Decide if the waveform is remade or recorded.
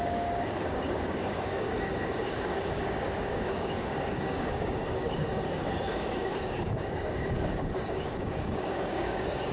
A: remade